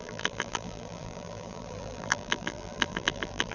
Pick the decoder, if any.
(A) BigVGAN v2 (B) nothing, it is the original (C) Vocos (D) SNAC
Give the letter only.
A